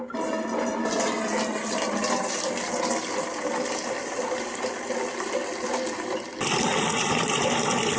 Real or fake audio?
real